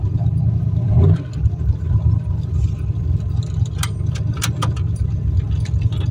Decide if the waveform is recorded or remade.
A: recorded